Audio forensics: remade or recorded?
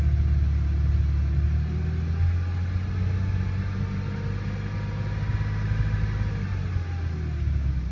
recorded